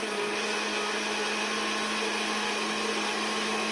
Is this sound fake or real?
real